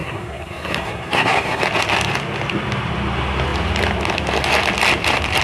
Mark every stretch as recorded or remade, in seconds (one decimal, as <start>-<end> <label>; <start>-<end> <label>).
0.0-1.6 remade; 1.6-5.4 recorded